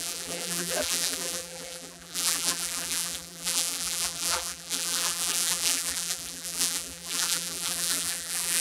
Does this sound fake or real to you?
fake